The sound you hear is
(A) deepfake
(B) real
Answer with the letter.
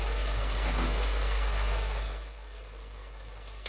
A